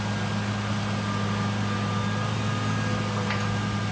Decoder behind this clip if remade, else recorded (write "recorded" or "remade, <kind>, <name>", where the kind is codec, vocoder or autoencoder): recorded